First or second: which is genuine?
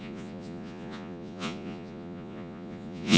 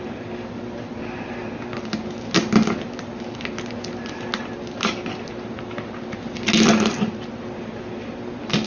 second